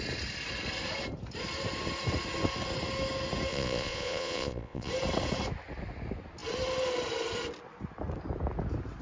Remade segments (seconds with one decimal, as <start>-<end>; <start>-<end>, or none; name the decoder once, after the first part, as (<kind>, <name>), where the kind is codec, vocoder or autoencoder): 3.5-4.9 (vocoder, Vocos)